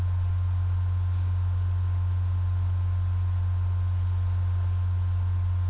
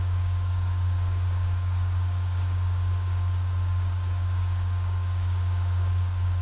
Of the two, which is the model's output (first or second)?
second